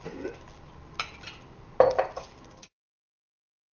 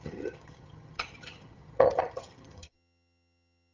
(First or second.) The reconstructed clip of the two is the second